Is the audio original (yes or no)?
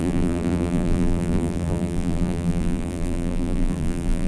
no